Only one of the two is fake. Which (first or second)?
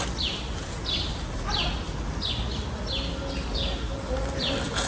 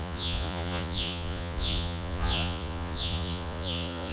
second